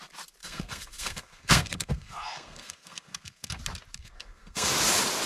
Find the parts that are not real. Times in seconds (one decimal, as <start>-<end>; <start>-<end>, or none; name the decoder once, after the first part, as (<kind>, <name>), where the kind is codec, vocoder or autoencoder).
0.4-3.6 (codec, SNAC); 4.0-4.7